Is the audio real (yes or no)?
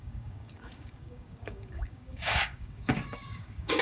no